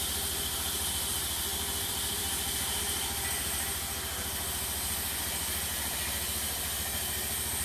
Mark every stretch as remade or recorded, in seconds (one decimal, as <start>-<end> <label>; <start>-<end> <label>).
0.0-1.5 recorded; 1.5-2.8 remade; 2.8-5.7 recorded; 5.7-6.2 remade; 6.2-7.6 recorded